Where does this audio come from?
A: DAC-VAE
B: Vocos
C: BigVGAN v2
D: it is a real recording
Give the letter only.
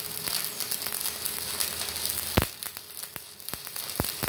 D